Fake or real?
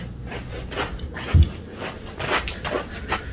real